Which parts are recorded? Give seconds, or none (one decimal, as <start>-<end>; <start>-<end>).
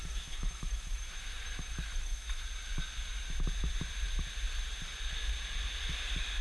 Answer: 2.4-6.4